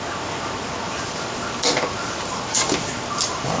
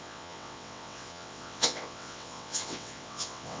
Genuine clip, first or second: first